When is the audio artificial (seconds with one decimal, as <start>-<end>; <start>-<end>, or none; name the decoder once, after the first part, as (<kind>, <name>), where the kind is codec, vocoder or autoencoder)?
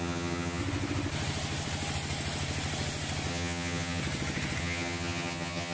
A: 0.0-0.6 (vocoder, HiFi-GAN); 3.3-4.0; 4.6-5.7